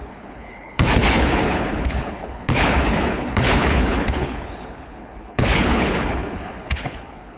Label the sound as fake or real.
fake